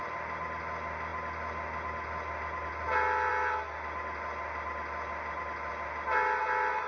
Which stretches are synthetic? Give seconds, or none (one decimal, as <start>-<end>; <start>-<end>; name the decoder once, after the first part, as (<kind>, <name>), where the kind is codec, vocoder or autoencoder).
none